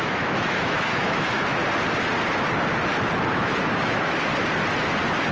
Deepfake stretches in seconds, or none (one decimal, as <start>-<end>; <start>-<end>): 0.0-1.6; 3.3-4.3